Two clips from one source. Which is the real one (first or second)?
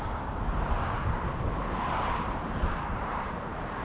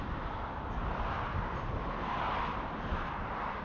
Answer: second